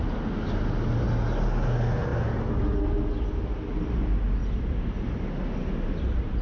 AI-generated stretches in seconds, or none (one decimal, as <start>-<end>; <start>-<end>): 4.4-5.7